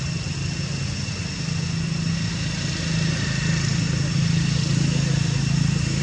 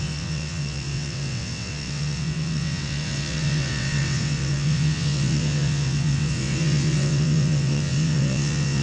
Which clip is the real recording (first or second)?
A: first